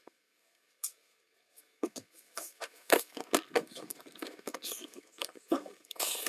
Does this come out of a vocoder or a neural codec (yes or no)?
yes